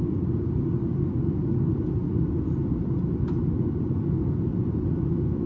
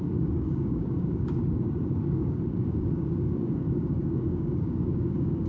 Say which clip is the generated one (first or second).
second